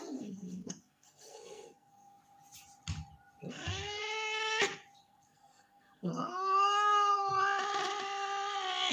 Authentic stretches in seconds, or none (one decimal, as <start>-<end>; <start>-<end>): 2.2-3.5; 4.0-5.0; 7.3-8.9

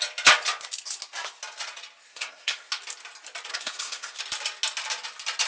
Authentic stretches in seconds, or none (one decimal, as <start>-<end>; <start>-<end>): 0.0-2.1; 2.7-3.5; 4.2-5.5

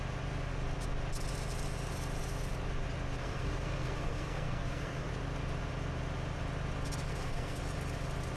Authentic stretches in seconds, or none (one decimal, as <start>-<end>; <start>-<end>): 0.0-3.2; 5.1-7.1; 7.6-8.4

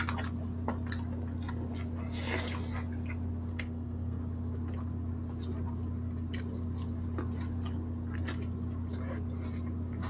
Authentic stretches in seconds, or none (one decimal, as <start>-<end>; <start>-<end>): 0.0-3.5; 4.2-10.1

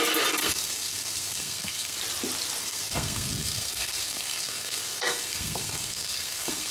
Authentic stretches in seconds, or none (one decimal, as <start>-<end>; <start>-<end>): 0.0-0.4; 2.0-2.6

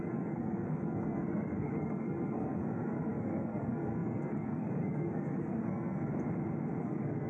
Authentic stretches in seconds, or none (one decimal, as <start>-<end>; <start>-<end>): 6.1-6.8

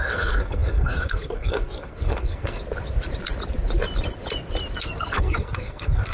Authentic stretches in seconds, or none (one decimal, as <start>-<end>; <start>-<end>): 2.6-4.8